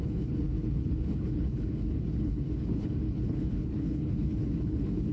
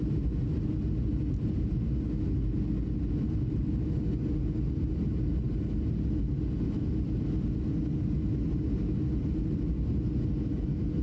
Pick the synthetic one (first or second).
first